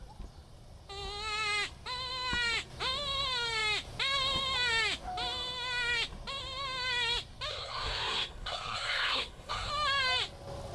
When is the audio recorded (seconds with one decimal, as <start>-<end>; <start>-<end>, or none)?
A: 0.0-7.5; 9.7-10.7